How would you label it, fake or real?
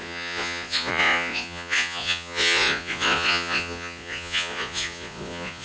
fake